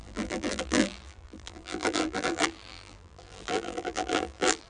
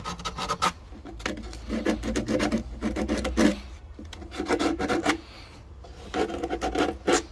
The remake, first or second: first